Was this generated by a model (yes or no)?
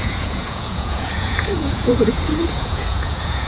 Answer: yes